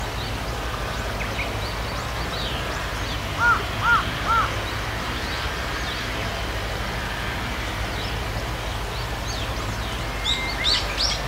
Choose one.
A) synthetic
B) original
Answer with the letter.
B